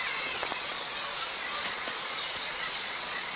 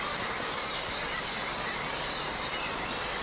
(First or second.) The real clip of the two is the second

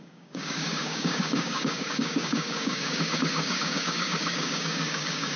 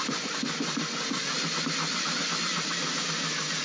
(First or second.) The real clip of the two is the second